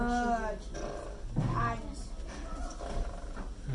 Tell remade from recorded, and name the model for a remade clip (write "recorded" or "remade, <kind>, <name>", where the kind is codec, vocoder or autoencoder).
recorded